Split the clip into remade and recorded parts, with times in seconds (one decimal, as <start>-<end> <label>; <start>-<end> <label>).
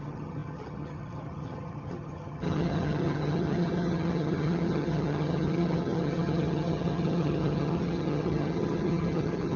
0.0-9.6 remade